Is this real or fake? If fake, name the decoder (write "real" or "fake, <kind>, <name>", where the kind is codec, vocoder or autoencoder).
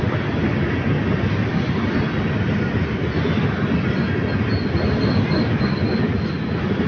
real